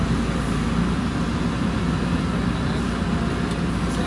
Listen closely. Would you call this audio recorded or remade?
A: recorded